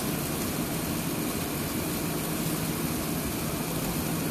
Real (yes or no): yes